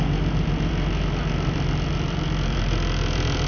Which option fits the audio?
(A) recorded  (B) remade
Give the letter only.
B